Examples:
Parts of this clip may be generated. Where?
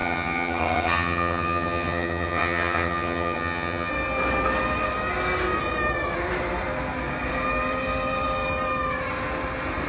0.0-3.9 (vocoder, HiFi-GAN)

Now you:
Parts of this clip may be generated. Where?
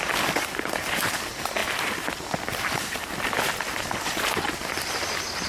none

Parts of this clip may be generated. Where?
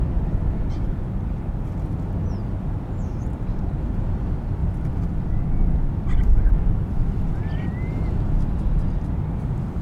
none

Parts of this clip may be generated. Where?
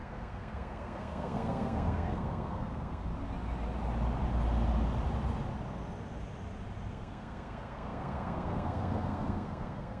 0.0-3.1 (codec, SNAC); 6.9-10.0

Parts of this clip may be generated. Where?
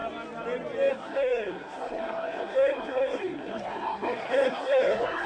0.9-5.3 (codec, SNAC)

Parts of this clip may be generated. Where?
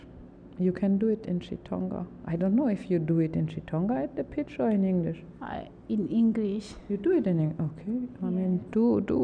none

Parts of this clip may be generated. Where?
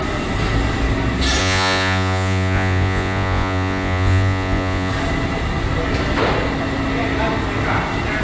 1.4-4.9 (vocoder, Vocos)